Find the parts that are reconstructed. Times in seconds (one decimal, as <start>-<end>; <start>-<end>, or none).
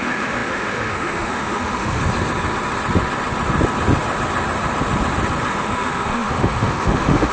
0.0-2.0; 5.5-7.3